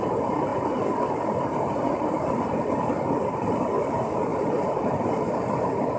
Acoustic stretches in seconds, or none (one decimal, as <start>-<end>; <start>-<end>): 0.0-6.0